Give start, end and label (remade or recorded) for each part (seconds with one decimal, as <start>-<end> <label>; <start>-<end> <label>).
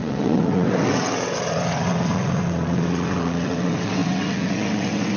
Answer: 0.0-5.2 remade